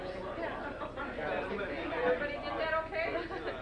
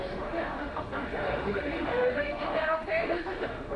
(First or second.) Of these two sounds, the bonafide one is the first